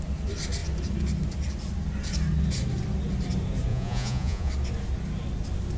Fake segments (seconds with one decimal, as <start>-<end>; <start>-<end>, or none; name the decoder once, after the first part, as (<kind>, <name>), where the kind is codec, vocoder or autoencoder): 3.7-4.5 (vocoder, Vocos)